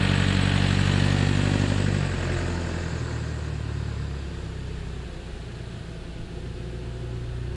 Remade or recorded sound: recorded